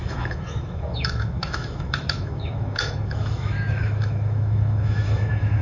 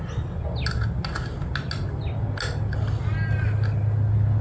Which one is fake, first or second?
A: first